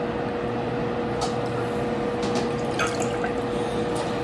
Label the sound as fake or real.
real